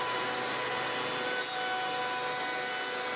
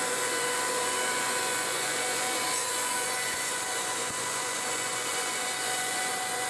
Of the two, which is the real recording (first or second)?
first